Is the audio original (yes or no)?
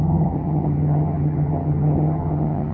no